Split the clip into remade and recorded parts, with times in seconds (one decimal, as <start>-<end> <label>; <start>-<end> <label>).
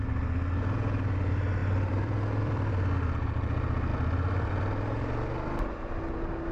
0.0-1.6 recorded; 1.6-2.7 remade; 2.7-3.9 recorded; 3.9-5.9 remade; 5.9-6.5 recorded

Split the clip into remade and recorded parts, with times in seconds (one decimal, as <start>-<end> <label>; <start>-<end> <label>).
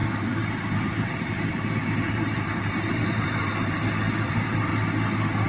0.0-4.7 remade; 4.7-5.5 recorded